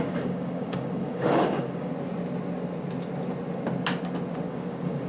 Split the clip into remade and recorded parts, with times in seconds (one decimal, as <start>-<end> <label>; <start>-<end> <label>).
0.0-1.9 remade; 1.9-4.5 recorded; 4.5-5.1 remade